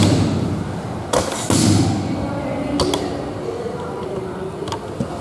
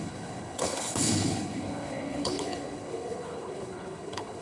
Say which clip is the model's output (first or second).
second